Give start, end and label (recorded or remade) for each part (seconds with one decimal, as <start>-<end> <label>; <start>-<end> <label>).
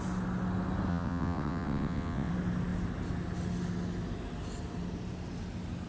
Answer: 0.0-0.9 recorded; 0.9-2.3 remade; 2.3-5.9 recorded